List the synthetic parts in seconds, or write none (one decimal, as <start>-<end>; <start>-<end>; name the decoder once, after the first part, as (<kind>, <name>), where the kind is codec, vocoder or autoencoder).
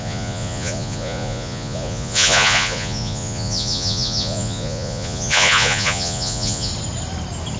0.0-6.7 (vocoder, Vocos)